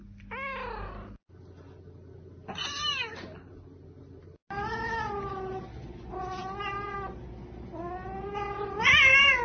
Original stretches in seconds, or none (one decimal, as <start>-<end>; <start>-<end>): 0.0-9.4